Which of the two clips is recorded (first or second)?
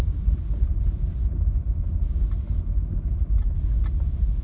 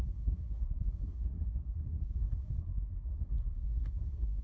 first